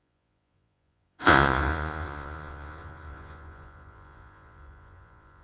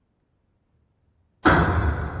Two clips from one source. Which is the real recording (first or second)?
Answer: second